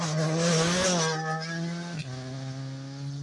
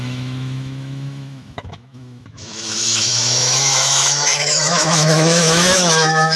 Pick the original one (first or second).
first